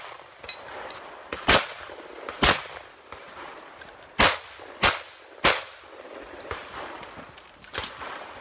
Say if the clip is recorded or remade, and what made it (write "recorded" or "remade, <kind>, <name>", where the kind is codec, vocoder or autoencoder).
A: recorded